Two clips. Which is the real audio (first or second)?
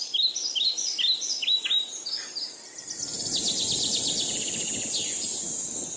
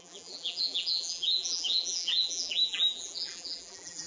first